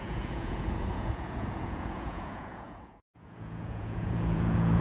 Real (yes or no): no